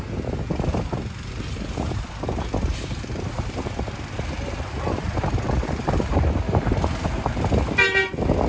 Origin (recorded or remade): recorded